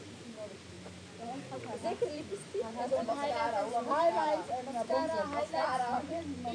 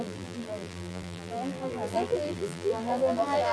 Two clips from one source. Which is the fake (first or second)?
second